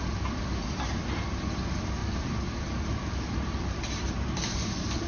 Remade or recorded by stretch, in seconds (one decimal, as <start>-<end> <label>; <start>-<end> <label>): 0.0-2.0 recorded; 2.0-5.1 remade